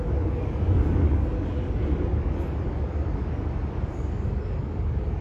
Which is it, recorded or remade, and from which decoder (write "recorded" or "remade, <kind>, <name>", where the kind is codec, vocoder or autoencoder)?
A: remade, codec, DAC